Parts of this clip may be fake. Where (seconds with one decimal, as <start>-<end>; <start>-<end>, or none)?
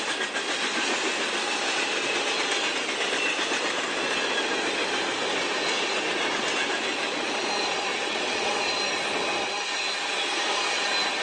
7.9-8.6